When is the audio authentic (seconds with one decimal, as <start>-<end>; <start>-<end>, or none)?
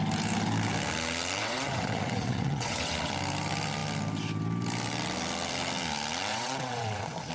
0.0-1.4; 3.1-6.3